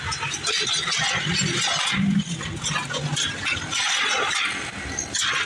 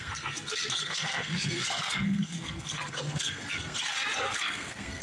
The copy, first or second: second